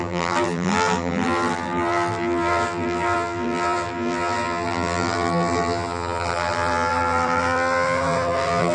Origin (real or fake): fake